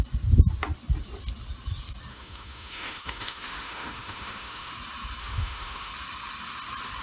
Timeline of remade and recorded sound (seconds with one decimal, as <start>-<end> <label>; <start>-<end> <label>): 0.0-2.1 recorded; 2.1-4.7 remade; 4.7-5.2 recorded; 5.2-5.9 remade; 5.9-7.0 recorded